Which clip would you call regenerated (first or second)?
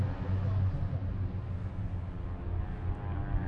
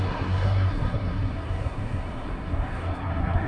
second